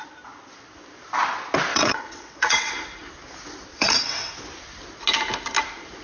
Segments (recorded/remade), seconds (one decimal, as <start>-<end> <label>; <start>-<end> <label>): 0.0-1.7 recorded; 1.7-2.7 remade; 2.7-3.7 recorded; 3.7-4.3 remade; 4.3-6.0 recorded